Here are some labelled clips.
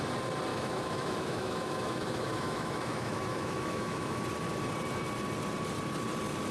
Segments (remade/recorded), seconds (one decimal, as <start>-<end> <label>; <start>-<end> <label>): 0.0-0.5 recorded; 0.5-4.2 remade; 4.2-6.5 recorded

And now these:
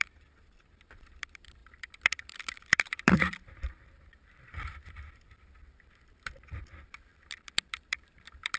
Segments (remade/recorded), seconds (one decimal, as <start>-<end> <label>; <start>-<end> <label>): 0.0-8.6 remade

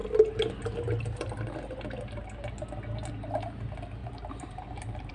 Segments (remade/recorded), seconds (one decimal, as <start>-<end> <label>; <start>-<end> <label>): 0.0-4.0 recorded; 4.0-5.1 remade

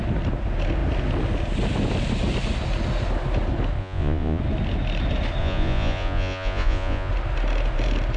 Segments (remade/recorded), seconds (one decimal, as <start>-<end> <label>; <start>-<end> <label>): 0.0-3.8 recorded; 3.8-4.4 remade; 4.4-5.4 recorded; 5.4-7.1 remade; 7.1-8.2 recorded

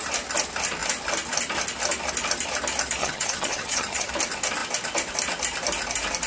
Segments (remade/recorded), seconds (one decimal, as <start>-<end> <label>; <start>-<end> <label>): 0.0-3.0 recorded; 3.0-4.1 remade; 4.1-6.3 recorded

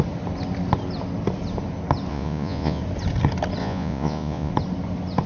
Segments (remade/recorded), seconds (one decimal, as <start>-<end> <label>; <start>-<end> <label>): 0.0-2.1 recorded; 2.1-2.8 remade; 2.8-3.6 recorded; 3.6-4.5 remade; 4.5-5.3 recorded